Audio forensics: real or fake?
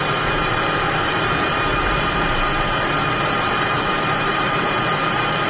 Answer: fake